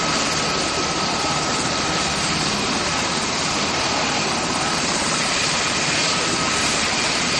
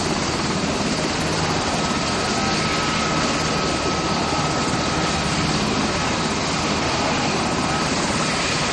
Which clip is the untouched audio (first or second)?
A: second